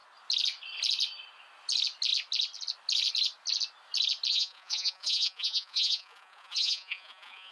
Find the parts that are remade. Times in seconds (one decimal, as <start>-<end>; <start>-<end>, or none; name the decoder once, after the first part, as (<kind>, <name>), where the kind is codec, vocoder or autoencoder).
4.3-7.5 (vocoder, Vocos)